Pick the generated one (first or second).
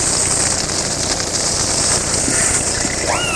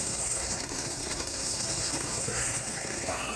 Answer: second